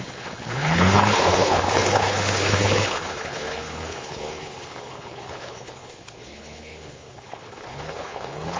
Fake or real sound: fake